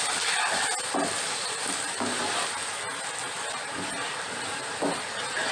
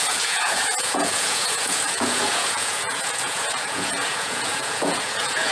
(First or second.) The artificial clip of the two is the second